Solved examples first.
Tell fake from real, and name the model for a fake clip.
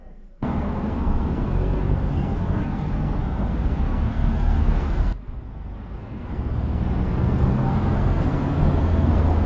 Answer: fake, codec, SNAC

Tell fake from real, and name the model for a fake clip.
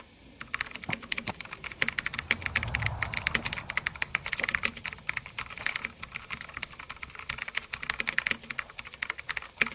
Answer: real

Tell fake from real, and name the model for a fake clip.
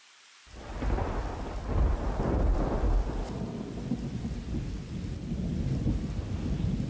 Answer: real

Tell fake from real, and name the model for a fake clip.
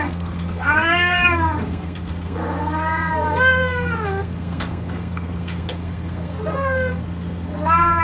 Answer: fake, codec, SNAC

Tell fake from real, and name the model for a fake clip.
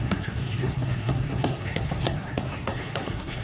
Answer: fake, codec, SNAC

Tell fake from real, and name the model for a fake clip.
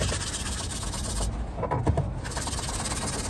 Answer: real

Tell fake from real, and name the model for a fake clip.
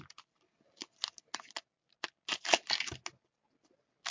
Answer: real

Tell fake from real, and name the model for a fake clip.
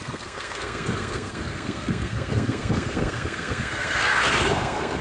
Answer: fake, codec, SNAC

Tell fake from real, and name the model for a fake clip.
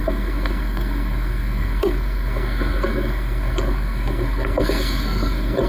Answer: fake, codec, SNAC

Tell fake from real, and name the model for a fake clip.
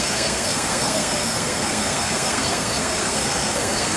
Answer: fake, codec, SNAC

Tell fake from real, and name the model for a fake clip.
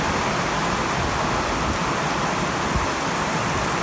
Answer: real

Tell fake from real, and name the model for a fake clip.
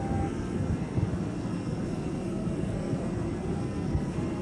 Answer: fake, codec, SNAC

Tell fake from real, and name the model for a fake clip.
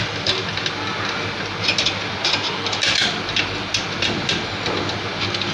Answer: real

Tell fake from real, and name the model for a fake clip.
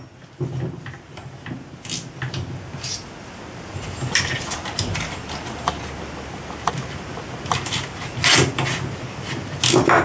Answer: real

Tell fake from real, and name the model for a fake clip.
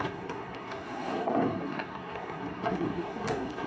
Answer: fake, codec, SNAC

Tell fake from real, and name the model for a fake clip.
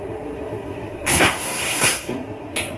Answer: fake, codec, SNAC